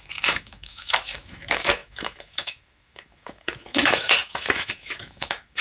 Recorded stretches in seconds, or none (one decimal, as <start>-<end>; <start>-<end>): none